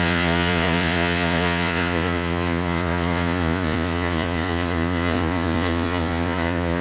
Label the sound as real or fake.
fake